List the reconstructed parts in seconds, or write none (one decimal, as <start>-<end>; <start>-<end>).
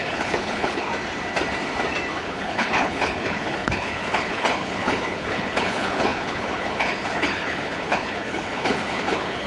0.0-0.9; 2.2-9.5